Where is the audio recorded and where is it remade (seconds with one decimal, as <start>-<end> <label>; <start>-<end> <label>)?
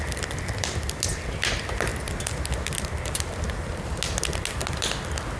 0.0-5.4 recorded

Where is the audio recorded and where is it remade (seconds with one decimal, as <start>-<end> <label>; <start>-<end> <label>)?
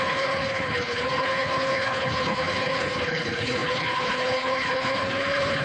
0.0-5.6 remade